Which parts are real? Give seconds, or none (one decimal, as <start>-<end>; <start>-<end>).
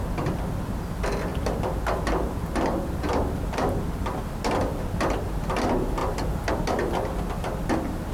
0.0-8.1